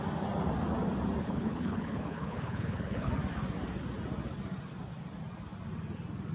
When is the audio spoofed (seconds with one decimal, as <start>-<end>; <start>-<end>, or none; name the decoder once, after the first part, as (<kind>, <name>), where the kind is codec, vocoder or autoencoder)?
1.2-3.1 (codec, HILCodec)